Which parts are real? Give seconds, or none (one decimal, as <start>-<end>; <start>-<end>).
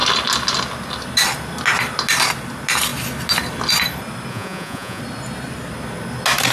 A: 0.0-4.3; 5.0-6.5